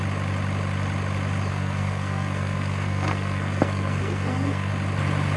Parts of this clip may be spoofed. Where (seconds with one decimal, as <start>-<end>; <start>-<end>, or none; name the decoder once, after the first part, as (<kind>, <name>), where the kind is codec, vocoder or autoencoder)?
1.5-4.7 (codec, SNAC)